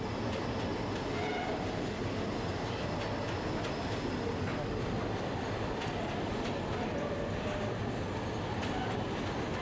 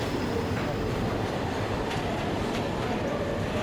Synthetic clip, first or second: second